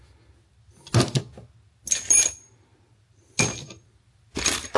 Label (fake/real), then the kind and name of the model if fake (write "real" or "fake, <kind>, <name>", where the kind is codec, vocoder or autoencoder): real